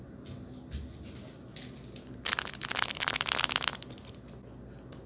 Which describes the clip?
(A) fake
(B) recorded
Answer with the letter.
B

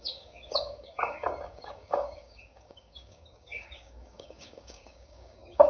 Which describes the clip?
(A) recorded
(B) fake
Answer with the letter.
B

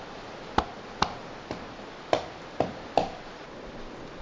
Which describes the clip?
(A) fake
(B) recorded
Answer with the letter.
B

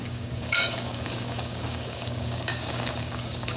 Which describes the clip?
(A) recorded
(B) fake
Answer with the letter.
B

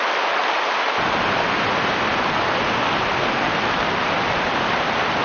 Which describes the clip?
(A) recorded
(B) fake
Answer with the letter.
A